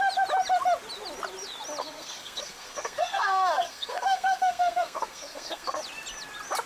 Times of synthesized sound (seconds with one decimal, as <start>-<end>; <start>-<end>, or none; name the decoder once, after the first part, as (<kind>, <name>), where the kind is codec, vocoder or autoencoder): 1.8-5.8 (codec, SNAC)